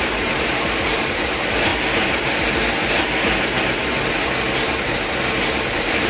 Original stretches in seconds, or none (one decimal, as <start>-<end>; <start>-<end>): 1.7-5.4